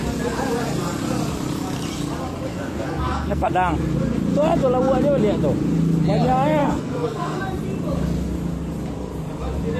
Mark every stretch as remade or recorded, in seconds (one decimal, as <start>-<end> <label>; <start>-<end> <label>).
0.0-2.5 recorded; 2.5-3.5 remade; 3.5-6.6 recorded; 6.6-7.4 remade; 7.4-9.8 recorded